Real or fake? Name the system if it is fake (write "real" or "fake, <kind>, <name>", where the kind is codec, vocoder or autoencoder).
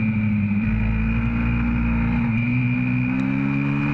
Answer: real